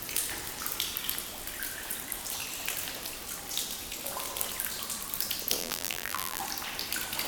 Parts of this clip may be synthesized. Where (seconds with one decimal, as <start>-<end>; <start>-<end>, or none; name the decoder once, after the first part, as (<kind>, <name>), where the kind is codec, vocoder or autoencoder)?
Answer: 5.6-6.4 (vocoder, BigVGAN v2)